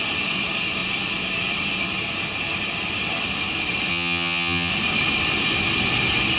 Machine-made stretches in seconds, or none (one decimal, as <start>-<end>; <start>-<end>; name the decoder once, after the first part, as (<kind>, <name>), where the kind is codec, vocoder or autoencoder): 3.9-4.7 (vocoder, HiFi-GAN)